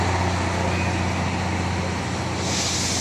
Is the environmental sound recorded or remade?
recorded